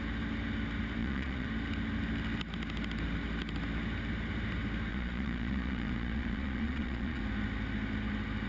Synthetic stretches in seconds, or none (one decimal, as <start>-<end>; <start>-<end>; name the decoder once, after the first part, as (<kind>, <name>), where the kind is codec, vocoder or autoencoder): 1.0-1.5 (vocoder, Vocos); 4.9-7.2